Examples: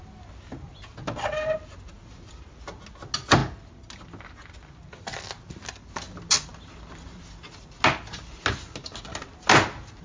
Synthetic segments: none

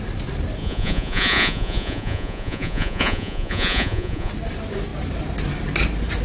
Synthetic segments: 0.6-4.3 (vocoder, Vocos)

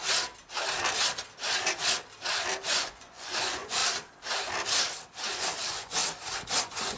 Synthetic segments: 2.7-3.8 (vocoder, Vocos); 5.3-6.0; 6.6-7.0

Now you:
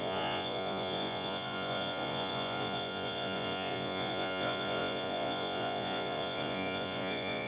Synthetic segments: 0.0-7.5 (vocoder, Vocos)

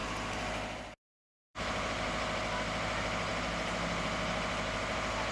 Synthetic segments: none

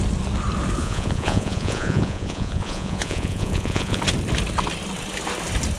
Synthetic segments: 0.8-4.0 (vocoder, Vocos)